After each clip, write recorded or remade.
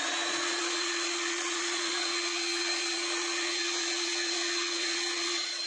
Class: remade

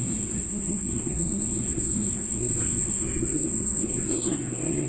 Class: remade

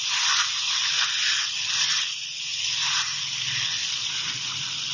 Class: recorded